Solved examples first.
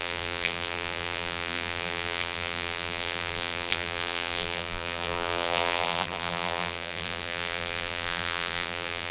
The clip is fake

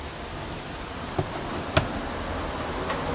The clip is real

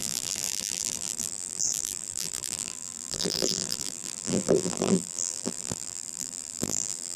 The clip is fake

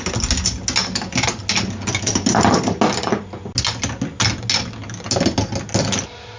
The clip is real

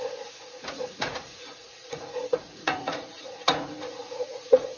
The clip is fake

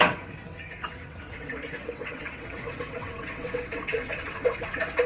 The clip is fake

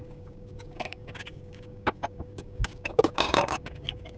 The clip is fake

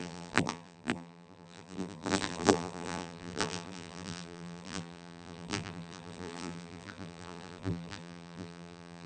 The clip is fake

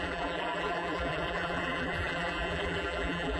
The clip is fake